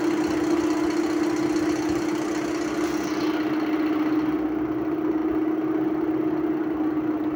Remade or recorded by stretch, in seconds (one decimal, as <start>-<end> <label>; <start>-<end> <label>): 0.0-7.4 recorded